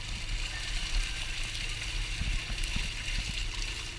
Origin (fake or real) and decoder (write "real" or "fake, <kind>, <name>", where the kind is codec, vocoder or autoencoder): real